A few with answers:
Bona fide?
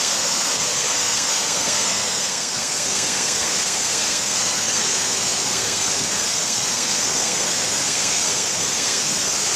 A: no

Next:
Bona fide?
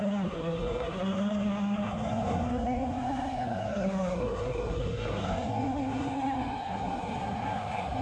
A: no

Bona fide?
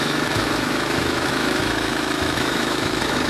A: no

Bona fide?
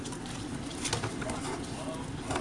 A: yes